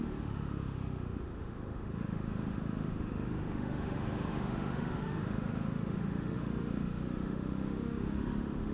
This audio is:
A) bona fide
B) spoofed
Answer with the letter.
B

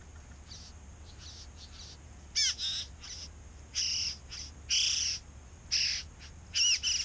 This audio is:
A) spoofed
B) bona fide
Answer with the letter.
B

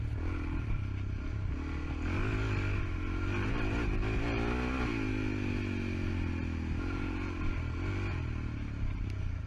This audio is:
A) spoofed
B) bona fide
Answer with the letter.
B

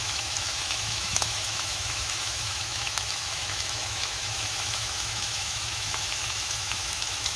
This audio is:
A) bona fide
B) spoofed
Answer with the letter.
B